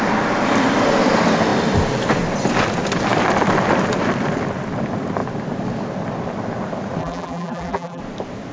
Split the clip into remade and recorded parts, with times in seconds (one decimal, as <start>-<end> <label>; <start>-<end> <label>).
0.0-7.0 recorded; 7.0-8.0 remade; 8.0-8.5 recorded